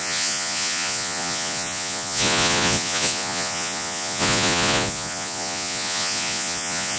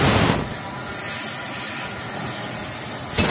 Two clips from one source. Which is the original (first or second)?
second